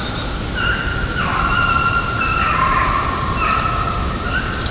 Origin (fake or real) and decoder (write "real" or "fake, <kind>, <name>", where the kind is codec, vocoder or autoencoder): real